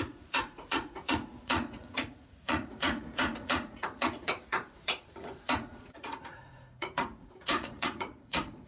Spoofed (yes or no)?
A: yes